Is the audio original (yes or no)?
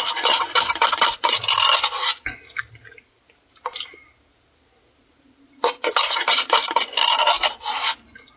yes